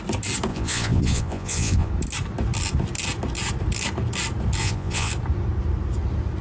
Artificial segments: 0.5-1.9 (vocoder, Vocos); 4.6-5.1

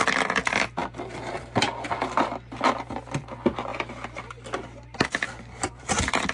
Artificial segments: none